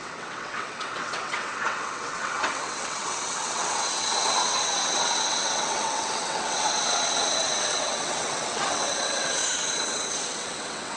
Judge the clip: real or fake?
fake